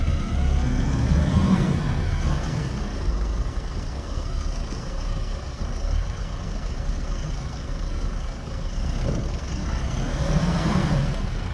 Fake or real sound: fake